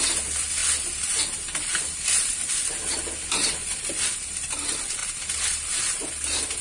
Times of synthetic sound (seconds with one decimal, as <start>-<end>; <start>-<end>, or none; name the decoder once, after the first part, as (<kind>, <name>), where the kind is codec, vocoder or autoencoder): none